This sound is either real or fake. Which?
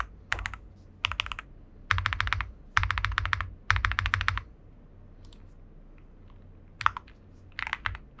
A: real